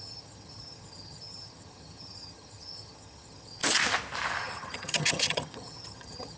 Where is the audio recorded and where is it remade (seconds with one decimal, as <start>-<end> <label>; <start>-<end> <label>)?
0.0-3.6 remade; 3.6-4.4 recorded; 4.4-6.4 remade